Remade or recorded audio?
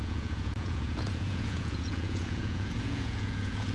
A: remade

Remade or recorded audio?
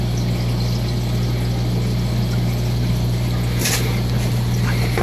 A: recorded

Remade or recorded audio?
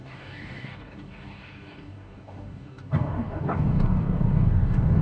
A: remade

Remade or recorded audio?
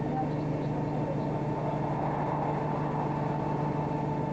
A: recorded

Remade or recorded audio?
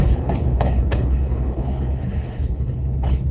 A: remade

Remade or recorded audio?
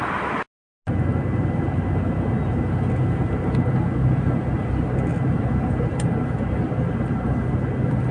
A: recorded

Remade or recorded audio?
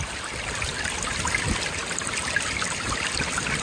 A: recorded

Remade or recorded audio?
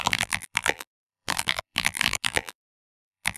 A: remade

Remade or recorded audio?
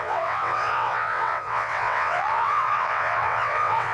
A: remade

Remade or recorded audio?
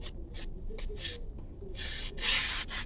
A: recorded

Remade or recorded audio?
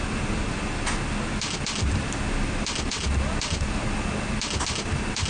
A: recorded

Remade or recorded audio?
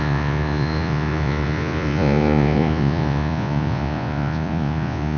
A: remade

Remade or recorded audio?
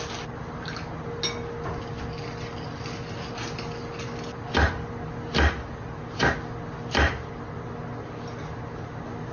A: recorded